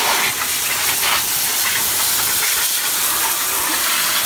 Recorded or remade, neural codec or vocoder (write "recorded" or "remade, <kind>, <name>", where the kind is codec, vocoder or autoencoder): recorded